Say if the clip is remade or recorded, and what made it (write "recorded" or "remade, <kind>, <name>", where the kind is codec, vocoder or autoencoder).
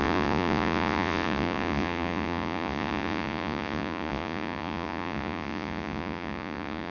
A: remade, vocoder, Vocos